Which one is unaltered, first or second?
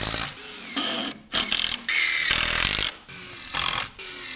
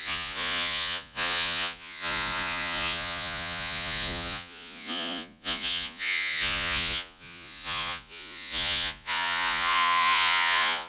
first